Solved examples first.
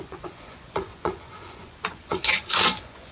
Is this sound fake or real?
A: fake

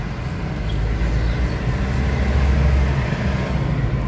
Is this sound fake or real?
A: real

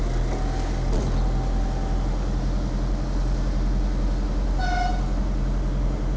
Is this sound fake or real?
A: real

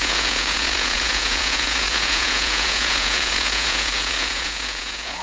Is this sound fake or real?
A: fake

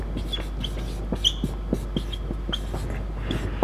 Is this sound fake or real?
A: real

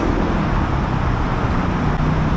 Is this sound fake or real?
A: real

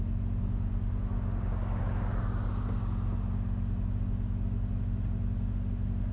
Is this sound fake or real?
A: real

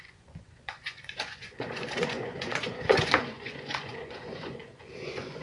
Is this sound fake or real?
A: fake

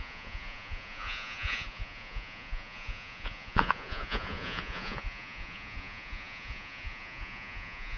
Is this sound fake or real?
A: fake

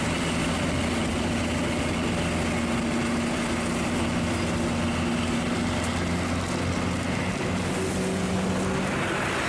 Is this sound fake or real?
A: real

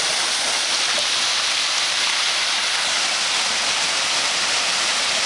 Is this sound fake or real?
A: real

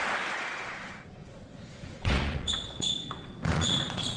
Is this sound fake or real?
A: fake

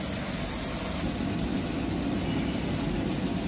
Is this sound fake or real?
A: real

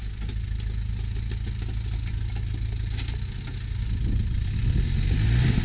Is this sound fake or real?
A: real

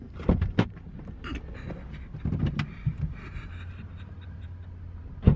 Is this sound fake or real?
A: real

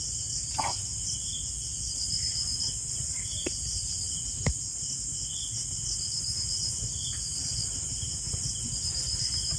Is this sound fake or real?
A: real